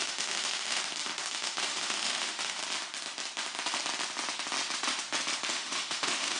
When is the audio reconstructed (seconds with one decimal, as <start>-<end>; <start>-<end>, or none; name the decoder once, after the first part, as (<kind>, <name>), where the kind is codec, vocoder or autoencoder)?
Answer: 0.0-0.8 (autoencoder, DAC-VAE); 1.3-2.6; 5.5-6.4